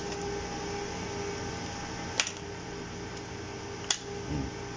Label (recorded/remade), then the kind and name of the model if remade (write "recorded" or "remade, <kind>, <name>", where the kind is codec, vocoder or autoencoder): recorded